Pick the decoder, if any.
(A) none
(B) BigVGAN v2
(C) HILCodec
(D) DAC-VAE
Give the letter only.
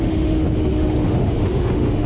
D